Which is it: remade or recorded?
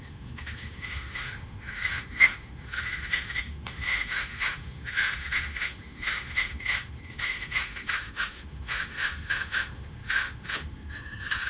remade